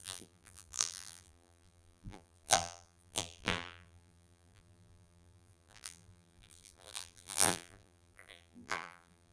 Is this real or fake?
fake